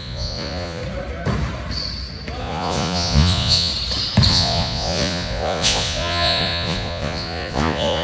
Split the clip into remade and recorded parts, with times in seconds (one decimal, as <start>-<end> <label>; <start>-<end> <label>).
0.0-0.8 remade; 0.8-2.4 recorded; 2.4-3.7 remade; 3.7-4.3 recorded; 4.3-8.0 remade